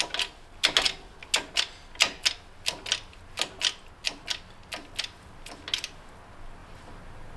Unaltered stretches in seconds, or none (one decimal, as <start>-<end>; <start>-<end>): 0.0-7.4